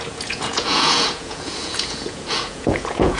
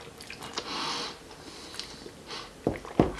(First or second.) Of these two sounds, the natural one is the second